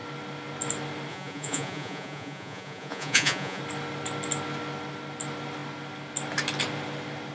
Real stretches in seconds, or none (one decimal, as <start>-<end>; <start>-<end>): 0.0-1.1; 3.6-7.3